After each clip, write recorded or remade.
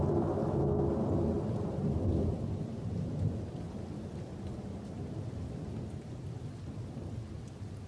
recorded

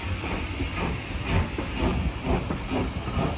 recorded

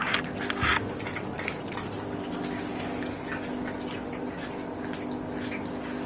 recorded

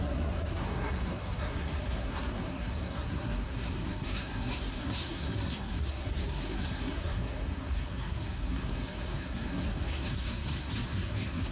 remade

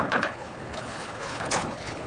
remade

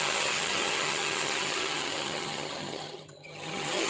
remade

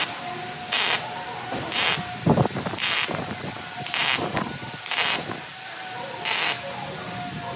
recorded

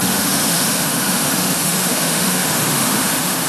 remade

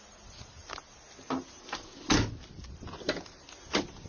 recorded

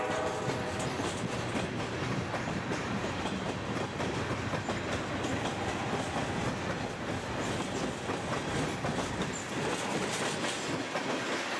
recorded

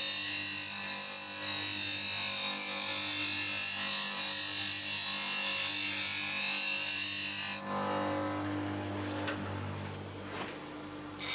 recorded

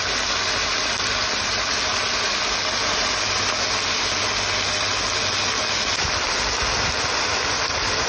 recorded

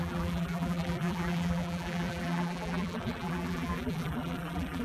remade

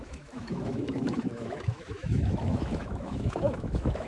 remade